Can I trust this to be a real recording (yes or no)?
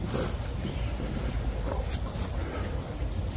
yes